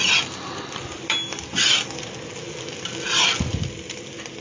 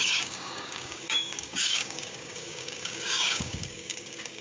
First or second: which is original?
first